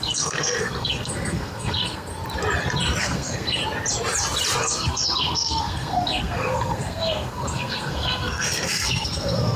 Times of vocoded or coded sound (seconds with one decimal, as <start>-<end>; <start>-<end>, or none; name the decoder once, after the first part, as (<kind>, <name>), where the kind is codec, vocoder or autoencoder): 0.0-2.1 (codec, SNAC); 3.0-3.6; 4.6-9.6